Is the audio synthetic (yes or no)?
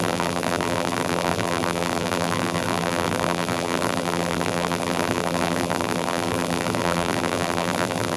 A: yes